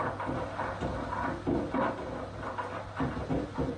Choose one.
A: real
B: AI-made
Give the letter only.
A